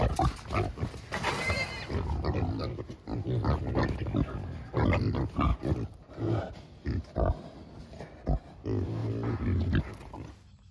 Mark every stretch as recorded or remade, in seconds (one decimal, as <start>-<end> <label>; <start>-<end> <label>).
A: 0.0-10.7 recorded